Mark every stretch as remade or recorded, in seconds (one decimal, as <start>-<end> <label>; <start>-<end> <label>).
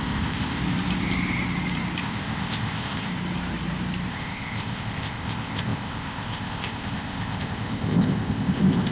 0.0-0.6 remade; 0.6-2.0 recorded; 2.0-3.1 remade; 3.1-4.1 recorded; 4.1-8.9 remade